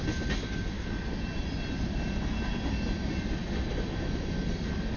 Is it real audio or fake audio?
real